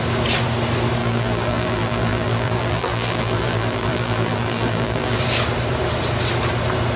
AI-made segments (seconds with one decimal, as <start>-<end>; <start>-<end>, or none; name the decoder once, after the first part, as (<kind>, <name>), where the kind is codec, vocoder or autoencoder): 1.0-5.2 (vocoder, BigVGAN v2)